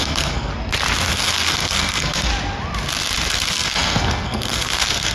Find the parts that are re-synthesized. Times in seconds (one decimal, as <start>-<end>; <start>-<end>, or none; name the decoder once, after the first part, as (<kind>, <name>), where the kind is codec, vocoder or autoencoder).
0.0-0.5 (codec, SNAC); 1.1-2.3; 3.3-5.1